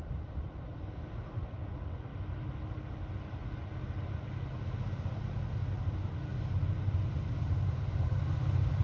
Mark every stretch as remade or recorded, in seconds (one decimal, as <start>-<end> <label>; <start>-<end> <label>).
0.0-8.8 recorded